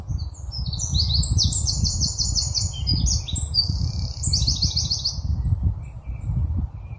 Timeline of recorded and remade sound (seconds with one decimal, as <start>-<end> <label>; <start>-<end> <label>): 0.0-7.0 recorded